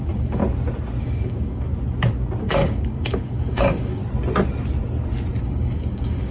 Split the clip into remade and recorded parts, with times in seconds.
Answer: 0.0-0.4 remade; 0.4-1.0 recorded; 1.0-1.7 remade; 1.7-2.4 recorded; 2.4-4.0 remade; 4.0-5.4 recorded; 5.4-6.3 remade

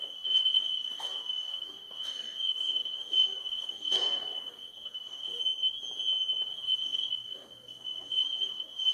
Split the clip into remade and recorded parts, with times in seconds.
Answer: 0.0-5.4 remade; 5.4-6.5 recorded; 6.5-8.9 remade

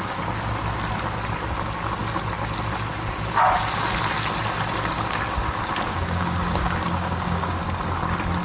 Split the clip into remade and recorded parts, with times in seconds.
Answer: 0.0-5.9 recorded; 5.9-7.6 remade; 7.6-8.4 recorded

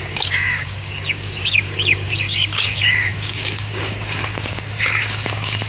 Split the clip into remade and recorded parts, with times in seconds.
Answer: 0.0-5.7 remade

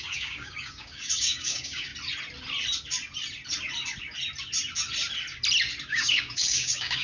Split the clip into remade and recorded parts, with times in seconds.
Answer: 0.0-1.9 remade; 1.9-5.9 recorded; 5.9-7.0 remade

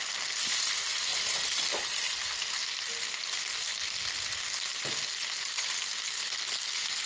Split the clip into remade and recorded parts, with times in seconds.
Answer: 0.0-7.1 recorded